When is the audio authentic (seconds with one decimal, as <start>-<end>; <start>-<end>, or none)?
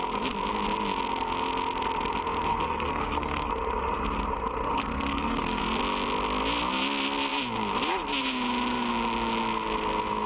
0.0-2.5; 3.5-4.7; 5.6-10.3